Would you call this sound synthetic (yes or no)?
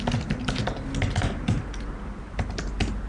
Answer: no